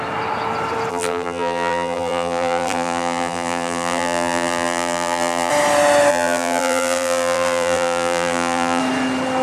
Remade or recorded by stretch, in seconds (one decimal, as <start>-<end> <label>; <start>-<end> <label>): 0.0-0.9 recorded; 0.9-5.5 remade; 5.5-6.1 recorded; 6.1-8.8 remade; 8.8-9.4 recorded